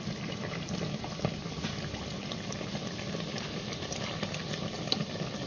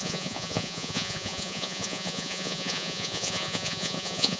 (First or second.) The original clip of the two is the first